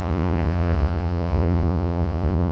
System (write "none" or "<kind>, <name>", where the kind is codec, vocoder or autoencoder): vocoder, Vocos